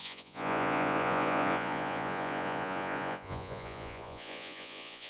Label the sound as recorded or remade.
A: remade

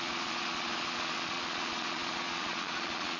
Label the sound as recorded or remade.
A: remade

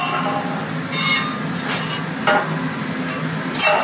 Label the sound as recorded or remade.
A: recorded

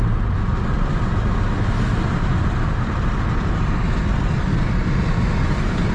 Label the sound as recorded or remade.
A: recorded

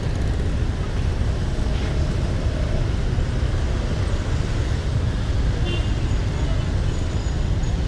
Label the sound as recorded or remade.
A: recorded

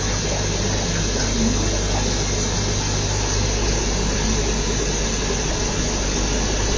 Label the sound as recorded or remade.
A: recorded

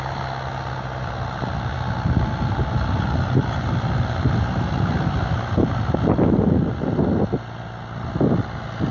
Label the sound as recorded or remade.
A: recorded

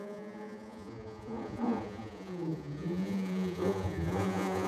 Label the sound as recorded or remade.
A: remade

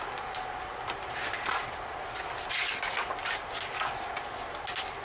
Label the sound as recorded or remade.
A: recorded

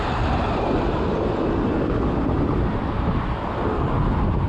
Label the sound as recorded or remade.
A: recorded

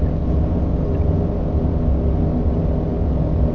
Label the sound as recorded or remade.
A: recorded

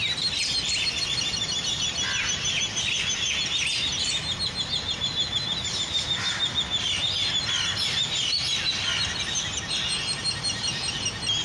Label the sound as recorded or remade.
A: recorded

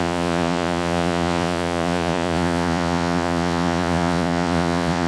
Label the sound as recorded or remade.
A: remade